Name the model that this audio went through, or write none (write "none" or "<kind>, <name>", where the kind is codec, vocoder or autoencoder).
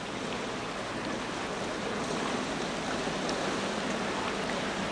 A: none